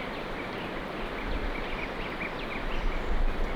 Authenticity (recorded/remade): remade